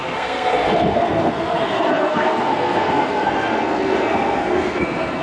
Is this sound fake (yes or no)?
yes